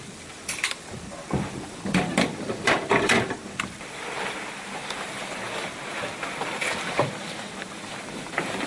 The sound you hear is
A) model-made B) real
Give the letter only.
A